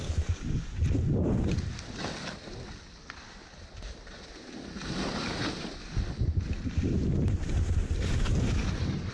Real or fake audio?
real